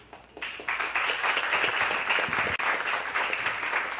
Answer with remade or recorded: recorded